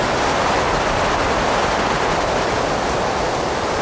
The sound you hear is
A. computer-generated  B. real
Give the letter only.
A